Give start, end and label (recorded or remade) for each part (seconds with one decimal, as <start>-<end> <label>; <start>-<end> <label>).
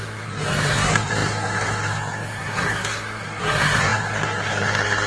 0.0-5.1 remade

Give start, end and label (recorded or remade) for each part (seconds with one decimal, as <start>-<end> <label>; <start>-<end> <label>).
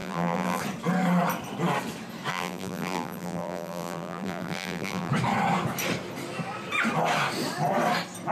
0.0-0.6 remade; 0.6-2.3 recorded; 2.3-5.1 remade; 5.1-8.3 recorded